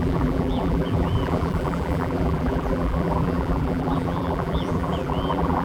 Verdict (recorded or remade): remade